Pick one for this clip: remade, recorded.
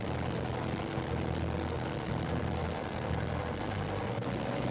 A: recorded